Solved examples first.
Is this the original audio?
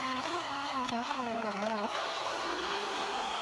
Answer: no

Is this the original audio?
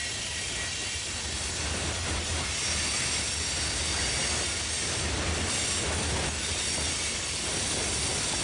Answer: yes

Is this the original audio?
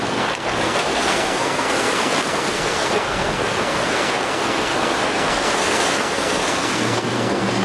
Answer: no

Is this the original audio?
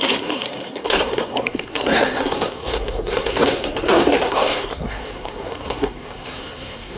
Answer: no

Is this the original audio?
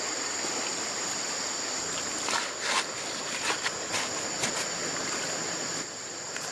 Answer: yes